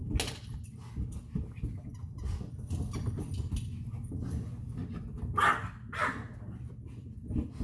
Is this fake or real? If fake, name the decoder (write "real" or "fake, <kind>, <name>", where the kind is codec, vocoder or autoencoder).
real